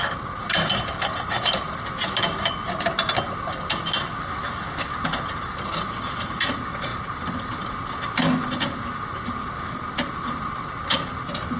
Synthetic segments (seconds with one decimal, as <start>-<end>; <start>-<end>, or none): none